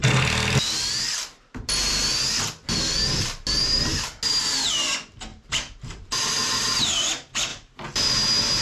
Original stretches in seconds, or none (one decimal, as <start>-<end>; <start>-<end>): 0.0-5.3; 6.1-8.6